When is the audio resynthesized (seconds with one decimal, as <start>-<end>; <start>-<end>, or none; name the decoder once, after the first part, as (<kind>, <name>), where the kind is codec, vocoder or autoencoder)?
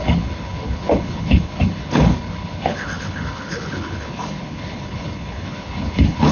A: 0.0-6.3 (codec, HILCodec)